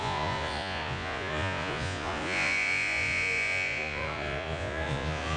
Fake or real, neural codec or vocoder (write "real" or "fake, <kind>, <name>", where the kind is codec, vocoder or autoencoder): fake, vocoder, Vocos